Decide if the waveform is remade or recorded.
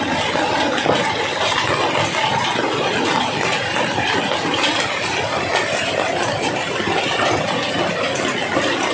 recorded